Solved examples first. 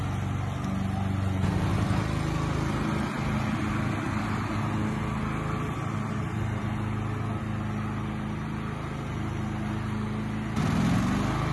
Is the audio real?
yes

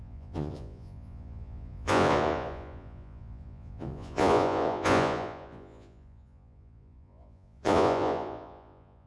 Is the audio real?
no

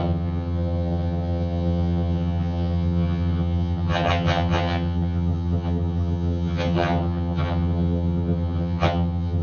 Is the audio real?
no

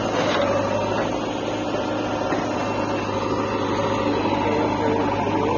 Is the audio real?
yes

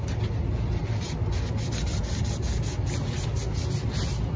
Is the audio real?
yes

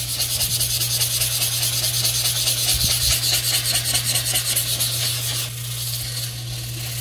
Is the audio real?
yes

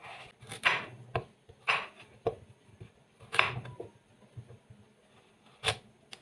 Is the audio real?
yes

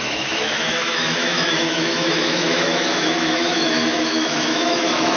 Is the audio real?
no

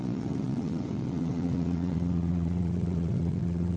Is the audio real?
no